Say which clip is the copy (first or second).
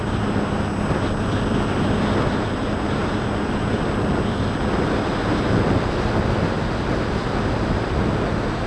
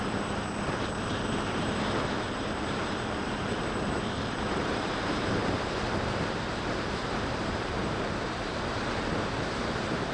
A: second